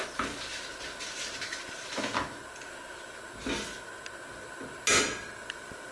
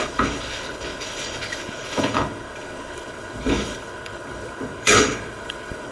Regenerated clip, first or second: second